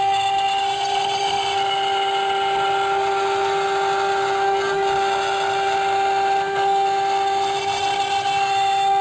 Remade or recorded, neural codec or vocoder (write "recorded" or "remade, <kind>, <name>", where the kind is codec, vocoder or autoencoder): recorded